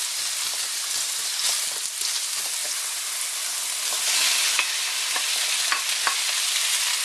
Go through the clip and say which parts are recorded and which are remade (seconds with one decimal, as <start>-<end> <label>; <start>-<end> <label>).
0.0-7.0 recorded